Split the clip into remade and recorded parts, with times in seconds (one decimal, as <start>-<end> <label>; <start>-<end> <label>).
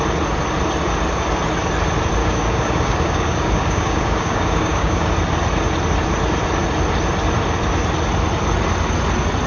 0.0-2.2 recorded; 2.2-5.1 remade; 5.1-9.5 recorded